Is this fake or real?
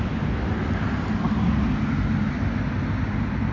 real